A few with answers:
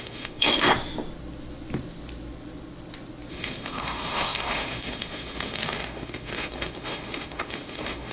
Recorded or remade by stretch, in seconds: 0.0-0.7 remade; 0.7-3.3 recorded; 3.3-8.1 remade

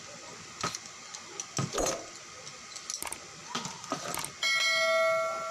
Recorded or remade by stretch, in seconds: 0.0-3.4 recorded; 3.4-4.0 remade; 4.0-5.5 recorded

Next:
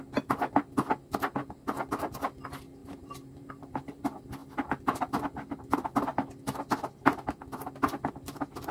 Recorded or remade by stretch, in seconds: 0.0-2.8 recorded; 2.8-4.0 remade; 4.0-8.7 recorded

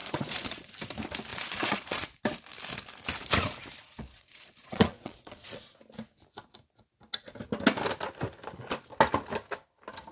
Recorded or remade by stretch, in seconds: 0.0-0.7 remade; 0.7-1.3 recorded; 1.3-2.2 remade; 2.2-3.8 recorded; 3.8-5.7 remade; 5.7-10.1 recorded